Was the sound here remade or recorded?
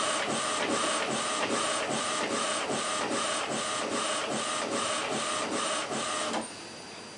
recorded